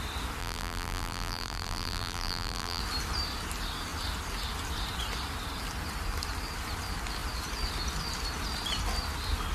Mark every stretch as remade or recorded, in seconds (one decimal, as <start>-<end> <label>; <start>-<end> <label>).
0.0-0.4 recorded; 0.4-2.8 remade; 2.8-9.5 recorded